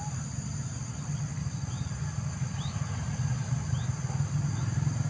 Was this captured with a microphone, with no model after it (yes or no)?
yes